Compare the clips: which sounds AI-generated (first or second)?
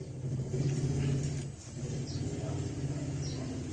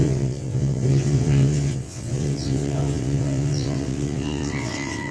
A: second